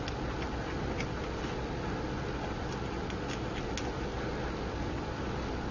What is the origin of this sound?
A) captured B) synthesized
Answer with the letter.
A